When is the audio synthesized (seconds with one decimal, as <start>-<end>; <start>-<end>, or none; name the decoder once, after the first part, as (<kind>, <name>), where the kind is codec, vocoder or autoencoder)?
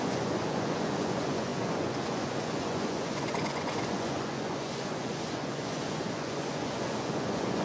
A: 0.0-7.6 (vocoder, Vocos)